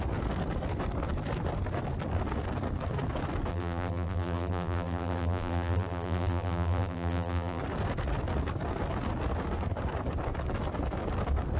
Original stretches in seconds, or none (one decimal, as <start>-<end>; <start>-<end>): 0.0-3.5; 7.6-11.6